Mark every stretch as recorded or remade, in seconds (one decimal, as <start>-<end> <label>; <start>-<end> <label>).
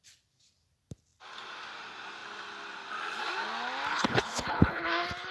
0.0-3.9 recorded; 3.9-4.8 remade; 4.8-5.3 recorded